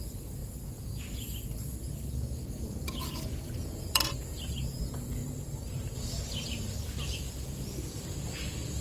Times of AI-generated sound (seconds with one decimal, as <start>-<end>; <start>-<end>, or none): 0.0-5.2; 7.1-7.8